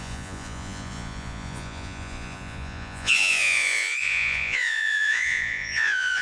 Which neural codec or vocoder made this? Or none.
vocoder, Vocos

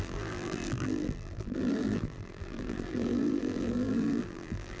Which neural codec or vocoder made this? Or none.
vocoder, BigVGAN v2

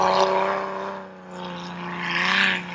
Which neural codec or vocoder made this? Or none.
none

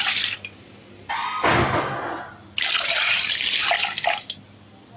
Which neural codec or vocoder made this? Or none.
none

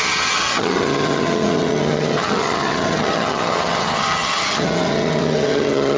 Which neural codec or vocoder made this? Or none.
vocoder, HiFi-GAN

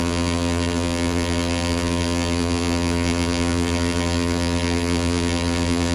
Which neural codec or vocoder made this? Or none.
vocoder, BigVGAN v2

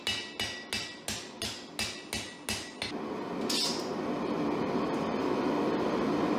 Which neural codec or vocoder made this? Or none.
none